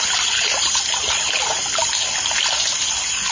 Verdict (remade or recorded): recorded